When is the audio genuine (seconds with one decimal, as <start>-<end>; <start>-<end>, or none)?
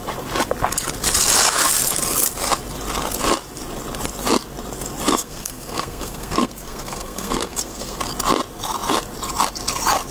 0.0-5.1; 8.0-10.1